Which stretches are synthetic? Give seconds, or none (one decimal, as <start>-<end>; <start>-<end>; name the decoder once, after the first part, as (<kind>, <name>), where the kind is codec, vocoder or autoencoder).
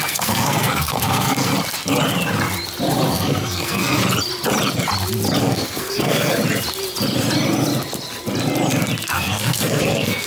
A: 0.0-1.5 (codec, SNAC); 3.1-4.0; 5.4-6.4; 9.1-10.3